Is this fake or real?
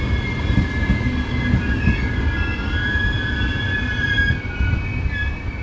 real